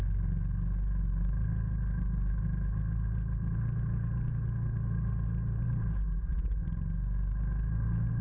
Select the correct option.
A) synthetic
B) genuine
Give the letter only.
B